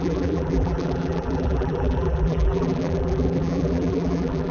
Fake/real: fake